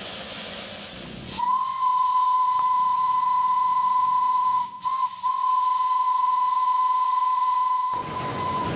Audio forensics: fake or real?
fake